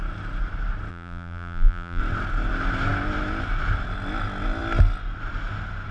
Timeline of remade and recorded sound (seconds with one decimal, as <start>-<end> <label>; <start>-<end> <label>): 0.0-0.9 recorded; 0.9-2.0 remade; 2.0-5.9 recorded